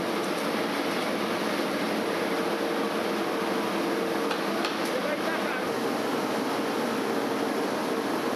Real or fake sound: real